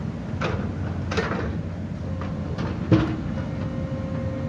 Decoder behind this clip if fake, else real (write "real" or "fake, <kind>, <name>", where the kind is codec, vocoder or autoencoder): real